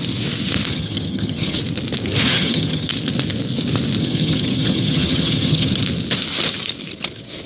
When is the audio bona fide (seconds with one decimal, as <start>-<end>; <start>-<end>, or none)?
0.0-0.7; 1.6-2.3; 2.9-4.0; 5.8-7.5